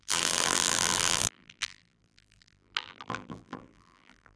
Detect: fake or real fake